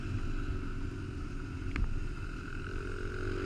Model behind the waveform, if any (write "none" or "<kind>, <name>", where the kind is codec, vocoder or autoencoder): none